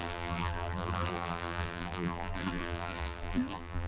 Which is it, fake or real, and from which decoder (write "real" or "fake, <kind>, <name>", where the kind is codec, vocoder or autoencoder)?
fake, vocoder, BigVGAN v2